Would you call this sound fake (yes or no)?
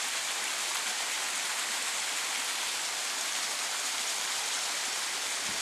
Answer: no